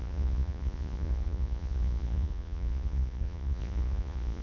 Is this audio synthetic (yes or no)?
yes